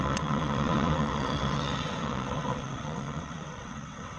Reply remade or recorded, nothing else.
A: remade